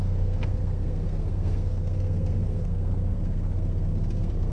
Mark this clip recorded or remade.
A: remade